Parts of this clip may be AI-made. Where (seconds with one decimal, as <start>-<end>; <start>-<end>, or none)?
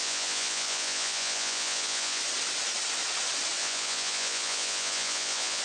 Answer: 0.0-2.2; 3.6-5.6